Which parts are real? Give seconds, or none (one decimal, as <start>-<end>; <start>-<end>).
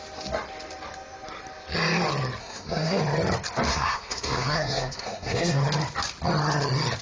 0.0-2.4; 3.0-3.7; 5.6-7.0